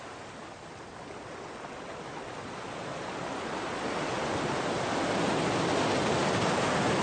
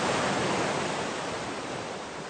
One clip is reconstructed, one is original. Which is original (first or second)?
first